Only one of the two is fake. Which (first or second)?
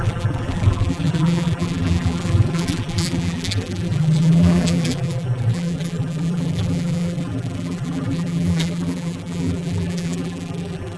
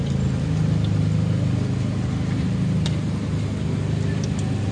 first